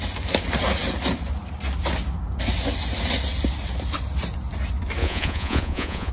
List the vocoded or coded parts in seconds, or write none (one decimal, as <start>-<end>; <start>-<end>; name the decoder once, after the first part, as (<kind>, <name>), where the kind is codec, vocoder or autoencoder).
5.0-6.1 (vocoder, Vocos)